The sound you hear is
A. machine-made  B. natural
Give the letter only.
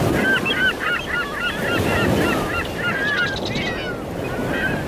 B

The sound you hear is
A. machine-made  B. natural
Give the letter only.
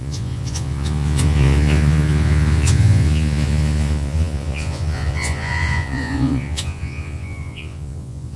A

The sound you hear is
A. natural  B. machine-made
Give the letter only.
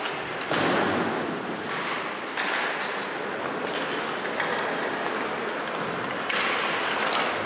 A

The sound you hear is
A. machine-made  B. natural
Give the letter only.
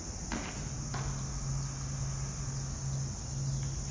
B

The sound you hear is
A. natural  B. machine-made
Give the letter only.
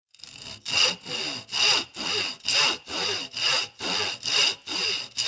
A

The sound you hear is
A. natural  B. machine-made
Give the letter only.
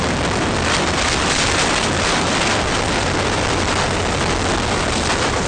B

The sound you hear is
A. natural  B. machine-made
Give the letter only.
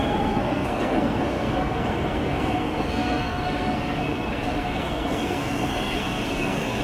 B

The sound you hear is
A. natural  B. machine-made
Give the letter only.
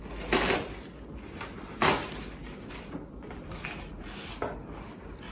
A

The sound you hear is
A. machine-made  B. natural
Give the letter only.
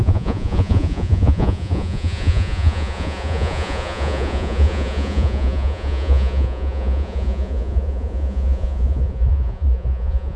A